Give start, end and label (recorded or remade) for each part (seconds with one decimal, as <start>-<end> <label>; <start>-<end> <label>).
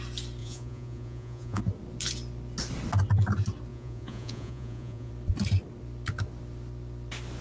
0.0-0.4 recorded; 0.4-1.6 remade; 1.6-3.7 recorded; 3.7-5.1 remade; 5.1-7.4 recorded